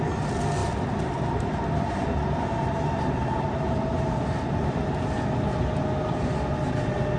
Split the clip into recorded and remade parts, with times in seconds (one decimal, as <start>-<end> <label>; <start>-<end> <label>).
0.0-0.6 recorded; 0.6-4.7 remade; 4.7-7.2 recorded